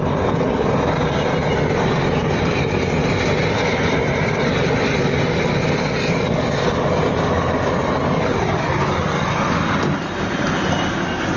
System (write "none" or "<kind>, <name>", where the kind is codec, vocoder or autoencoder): none